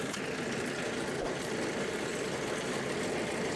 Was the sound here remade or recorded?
recorded